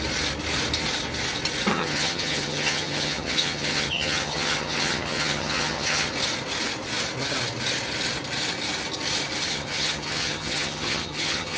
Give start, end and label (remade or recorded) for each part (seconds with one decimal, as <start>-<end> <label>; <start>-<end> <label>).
0.0-1.7 recorded; 1.7-6.1 remade; 6.1-9.5 recorded; 9.5-11.6 remade